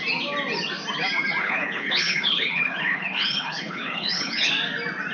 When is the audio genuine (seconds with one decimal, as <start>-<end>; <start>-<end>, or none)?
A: 0.0-1.4; 4.5-5.1